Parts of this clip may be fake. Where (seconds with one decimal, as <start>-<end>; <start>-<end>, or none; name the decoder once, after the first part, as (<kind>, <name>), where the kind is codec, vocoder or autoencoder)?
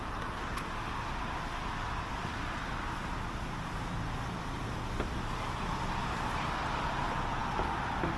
2.1-6.0 (vocoder, BigVGAN v2); 7.4-8.2